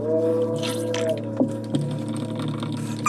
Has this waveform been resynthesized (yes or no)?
no